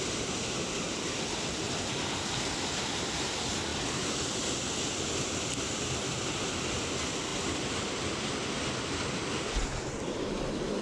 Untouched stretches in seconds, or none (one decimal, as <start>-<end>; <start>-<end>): 0.0-10.8